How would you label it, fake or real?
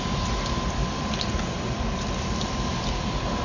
fake